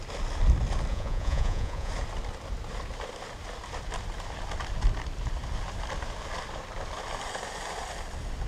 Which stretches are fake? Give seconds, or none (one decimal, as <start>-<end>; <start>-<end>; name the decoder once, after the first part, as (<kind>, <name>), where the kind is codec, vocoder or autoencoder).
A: 0.9-1.9 (vocoder, Vocos)